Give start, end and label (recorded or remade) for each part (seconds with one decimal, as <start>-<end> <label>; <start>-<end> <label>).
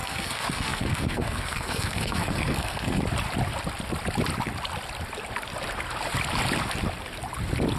0.0-3.0 remade; 3.0-7.8 recorded